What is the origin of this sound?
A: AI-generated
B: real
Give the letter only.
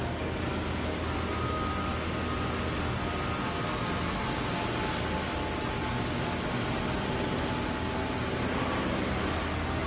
B